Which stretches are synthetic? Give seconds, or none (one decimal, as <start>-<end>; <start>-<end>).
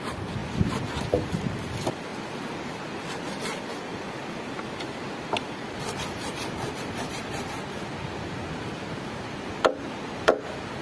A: 3.9-7.1